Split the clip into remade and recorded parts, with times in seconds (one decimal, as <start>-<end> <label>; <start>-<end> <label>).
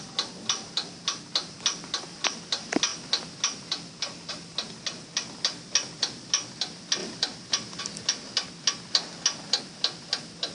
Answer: 0.0-7.0 recorded; 7.0-7.8 remade; 7.8-10.5 recorded